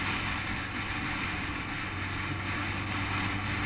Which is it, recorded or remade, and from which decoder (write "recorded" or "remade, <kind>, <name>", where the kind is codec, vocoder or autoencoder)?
recorded